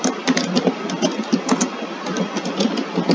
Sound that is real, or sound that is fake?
real